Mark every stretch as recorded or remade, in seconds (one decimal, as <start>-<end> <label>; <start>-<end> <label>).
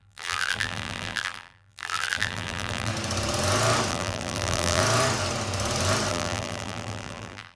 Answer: 0.0-2.9 remade; 2.9-3.9 recorded; 3.9-4.8 remade; 4.8-6.1 recorded; 6.1-7.6 remade